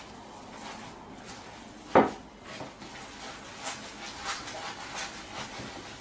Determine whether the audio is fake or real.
real